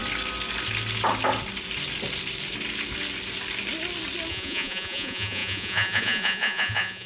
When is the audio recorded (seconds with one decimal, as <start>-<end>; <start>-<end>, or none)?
0.0-4.3